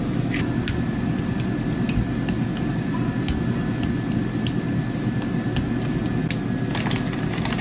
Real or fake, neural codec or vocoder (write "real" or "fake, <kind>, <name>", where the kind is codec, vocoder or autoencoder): real